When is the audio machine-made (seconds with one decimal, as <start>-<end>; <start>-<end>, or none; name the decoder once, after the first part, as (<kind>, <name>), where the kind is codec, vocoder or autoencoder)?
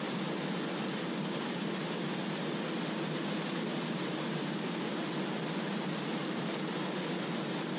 none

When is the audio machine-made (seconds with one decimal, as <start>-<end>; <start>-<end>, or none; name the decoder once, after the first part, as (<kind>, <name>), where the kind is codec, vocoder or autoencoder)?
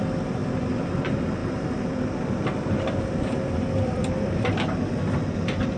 0.0-5.8 (vocoder, BigVGAN v2)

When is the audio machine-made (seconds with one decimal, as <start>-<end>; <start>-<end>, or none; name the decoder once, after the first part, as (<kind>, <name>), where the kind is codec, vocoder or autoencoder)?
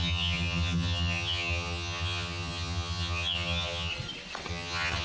0.0-3.9 (vocoder, HiFi-GAN); 4.5-5.0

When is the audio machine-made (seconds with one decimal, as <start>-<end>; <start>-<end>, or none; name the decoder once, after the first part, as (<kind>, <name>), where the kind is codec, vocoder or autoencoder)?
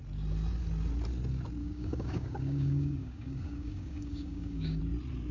1.6-4.8 (codec, DAC)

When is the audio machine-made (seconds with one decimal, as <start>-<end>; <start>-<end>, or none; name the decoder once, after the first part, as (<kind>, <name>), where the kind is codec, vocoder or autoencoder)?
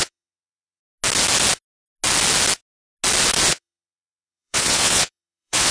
0.0-0.8 (vocoder, Vocos); 3.5-5.7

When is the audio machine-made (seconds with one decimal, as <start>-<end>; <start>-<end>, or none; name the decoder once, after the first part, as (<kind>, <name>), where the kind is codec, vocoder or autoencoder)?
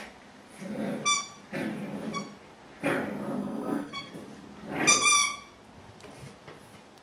3.4-4.1 (codec, SNAC)